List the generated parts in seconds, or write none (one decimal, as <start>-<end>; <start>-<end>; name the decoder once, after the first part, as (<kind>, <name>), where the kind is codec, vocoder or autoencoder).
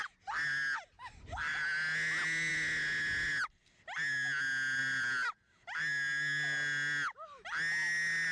none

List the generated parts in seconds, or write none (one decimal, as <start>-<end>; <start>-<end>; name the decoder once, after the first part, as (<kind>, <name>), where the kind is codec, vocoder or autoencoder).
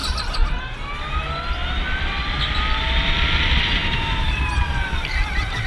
3.8-4.5 (vocoder, BigVGAN v2)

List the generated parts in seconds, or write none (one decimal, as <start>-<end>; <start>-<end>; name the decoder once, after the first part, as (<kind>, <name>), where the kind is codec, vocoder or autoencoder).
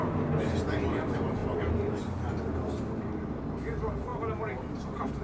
none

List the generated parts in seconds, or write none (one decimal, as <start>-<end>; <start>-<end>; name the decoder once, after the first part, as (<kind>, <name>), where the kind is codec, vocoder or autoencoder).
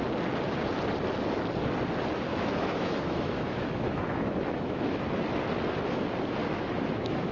2.3-5.0 (autoencoder, DAC-VAE); 6.4-7.3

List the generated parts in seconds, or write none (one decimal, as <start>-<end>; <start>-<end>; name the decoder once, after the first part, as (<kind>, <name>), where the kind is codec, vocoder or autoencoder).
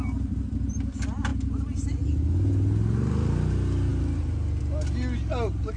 none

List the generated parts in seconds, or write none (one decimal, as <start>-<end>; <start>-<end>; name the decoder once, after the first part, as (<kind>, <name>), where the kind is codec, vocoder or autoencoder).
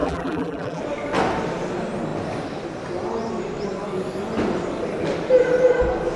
0.0-0.8 (vocoder, BigVGAN v2)